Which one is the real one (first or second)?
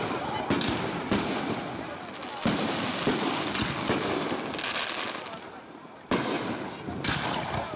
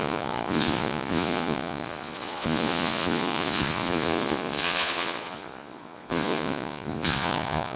first